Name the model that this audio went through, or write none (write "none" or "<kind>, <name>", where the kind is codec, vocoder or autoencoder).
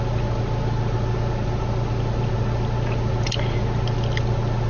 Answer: none